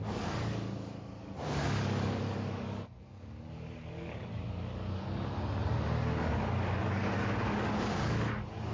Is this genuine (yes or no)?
no